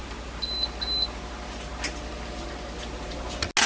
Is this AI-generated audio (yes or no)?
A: no